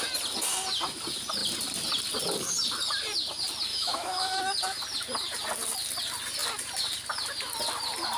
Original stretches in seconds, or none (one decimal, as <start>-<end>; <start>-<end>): 0.0-3.7; 4.4-8.2